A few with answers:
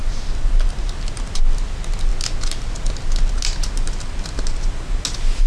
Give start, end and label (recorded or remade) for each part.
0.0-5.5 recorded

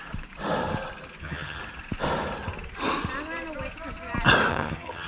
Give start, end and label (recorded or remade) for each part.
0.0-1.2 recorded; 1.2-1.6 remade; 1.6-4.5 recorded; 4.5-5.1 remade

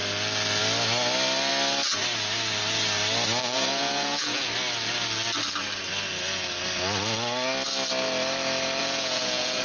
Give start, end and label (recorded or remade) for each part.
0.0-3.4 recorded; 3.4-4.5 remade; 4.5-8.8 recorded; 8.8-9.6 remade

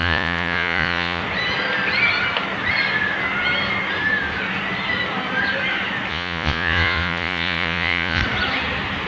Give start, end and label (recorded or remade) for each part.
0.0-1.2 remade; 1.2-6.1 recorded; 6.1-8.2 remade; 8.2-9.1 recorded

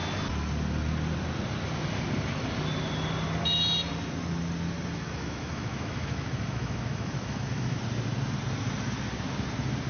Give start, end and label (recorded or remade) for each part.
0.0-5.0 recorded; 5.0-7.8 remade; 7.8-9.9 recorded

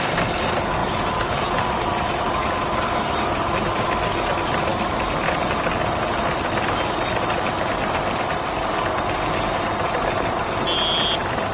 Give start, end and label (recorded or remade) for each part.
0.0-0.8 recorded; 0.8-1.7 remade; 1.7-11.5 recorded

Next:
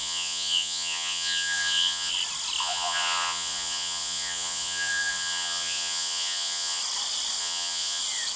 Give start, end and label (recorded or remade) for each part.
0.0-2.1 remade; 2.1-2.6 recorded; 2.6-6.8 remade; 6.8-7.4 recorded; 7.4-8.0 remade; 8.0-8.4 recorded